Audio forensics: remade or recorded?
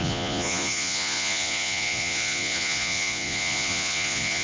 remade